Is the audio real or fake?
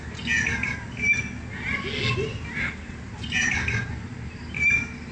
real